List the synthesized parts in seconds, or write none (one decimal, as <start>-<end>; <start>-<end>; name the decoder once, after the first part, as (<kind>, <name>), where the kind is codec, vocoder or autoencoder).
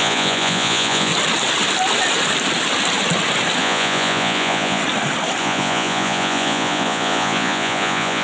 0.0-1.1 (vocoder, Vocos); 3.6-4.8; 5.4-8.2